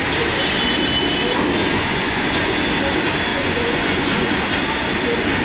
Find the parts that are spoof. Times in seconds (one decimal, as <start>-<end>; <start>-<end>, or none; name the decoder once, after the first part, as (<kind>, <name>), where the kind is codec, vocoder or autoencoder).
1.6-2.6 (vocoder, Vocos); 3.3-4.4